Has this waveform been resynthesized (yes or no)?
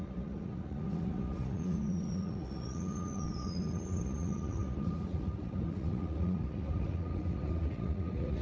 yes